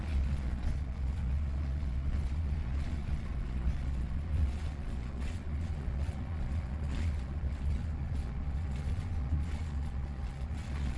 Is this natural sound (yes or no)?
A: no